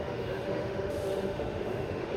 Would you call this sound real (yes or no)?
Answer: no